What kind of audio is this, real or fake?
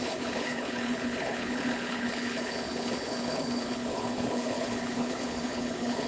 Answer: fake